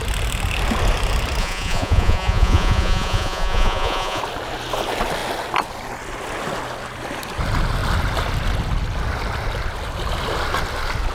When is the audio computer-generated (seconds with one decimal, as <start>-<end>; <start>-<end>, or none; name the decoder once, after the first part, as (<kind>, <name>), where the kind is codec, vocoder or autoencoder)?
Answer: 1.4-4.2 (vocoder, Vocos)